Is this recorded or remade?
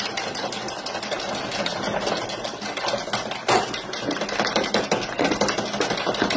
recorded